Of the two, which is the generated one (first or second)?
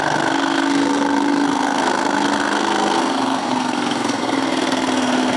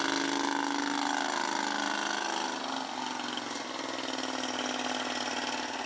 first